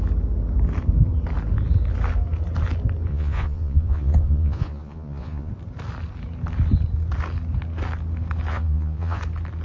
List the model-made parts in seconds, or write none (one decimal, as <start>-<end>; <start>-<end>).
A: 3.1-5.5; 8.5-9.2